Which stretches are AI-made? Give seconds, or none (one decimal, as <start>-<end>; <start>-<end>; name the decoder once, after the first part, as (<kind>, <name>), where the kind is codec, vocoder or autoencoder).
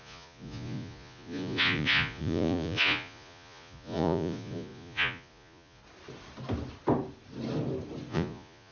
0.0-5.8 (vocoder, Vocos); 8.1-8.7